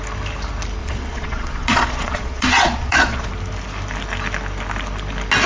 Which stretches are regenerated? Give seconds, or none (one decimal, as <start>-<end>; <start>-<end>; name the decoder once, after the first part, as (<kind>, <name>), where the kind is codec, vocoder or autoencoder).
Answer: 0.8-3.3 (vocoder, Vocos)